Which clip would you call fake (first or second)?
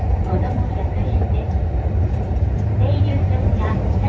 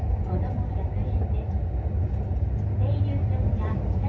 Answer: first